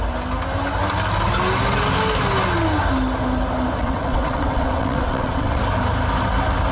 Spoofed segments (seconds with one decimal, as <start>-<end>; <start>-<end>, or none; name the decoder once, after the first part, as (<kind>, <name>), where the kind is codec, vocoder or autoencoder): 3.8-5.6 (vocoder, WaveNeXt)